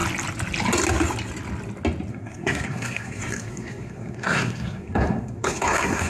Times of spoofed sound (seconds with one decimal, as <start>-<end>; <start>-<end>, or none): 2.1-6.1

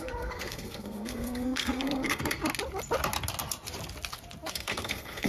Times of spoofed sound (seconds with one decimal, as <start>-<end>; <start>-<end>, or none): 0.0-2.4; 4.5-5.3

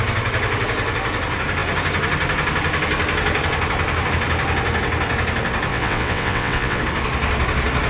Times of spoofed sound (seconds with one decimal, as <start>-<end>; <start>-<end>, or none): 5.7-6.8

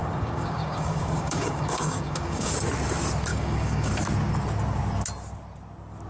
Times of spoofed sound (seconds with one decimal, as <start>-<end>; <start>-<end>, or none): 0.0-2.5; 3.3-3.9

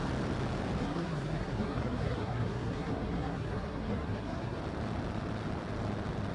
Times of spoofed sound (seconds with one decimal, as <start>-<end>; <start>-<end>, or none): 0.8-4.6

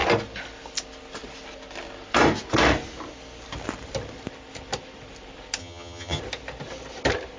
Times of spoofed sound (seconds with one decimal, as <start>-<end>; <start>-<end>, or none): 5.6-6.2

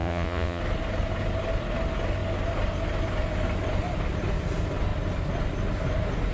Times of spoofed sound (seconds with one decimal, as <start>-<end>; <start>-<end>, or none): 0.0-0.6